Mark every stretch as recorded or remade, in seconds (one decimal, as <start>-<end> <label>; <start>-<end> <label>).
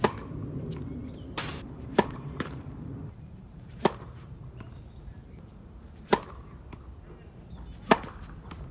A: 0.0-1.5 recorded; 1.5-6.1 remade; 6.1-8.7 recorded